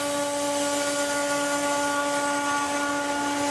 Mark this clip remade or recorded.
recorded